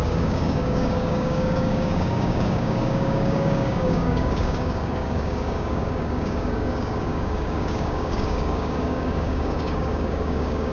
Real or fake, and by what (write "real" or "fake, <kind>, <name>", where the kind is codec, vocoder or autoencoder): fake, codec, DAC